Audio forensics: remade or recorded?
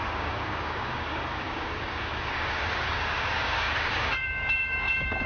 remade